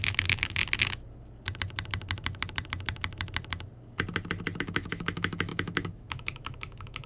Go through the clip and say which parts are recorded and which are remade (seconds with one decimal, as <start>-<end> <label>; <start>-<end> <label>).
0.0-0.6 remade; 0.6-4.6 recorded; 4.6-7.1 remade